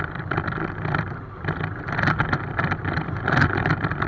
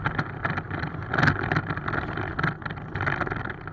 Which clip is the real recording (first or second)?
second